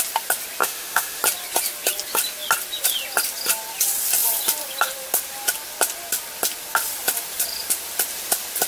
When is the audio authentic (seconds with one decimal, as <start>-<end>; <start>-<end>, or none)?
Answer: 0.0-0.6; 1.2-8.7